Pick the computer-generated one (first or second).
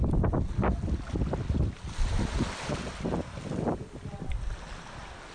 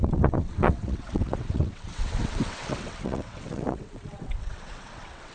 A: second